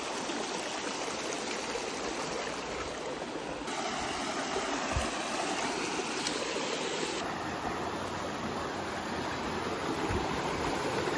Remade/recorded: recorded